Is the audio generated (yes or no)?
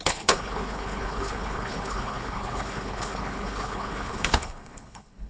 yes